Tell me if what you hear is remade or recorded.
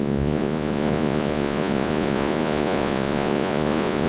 remade